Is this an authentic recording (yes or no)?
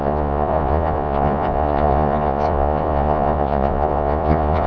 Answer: no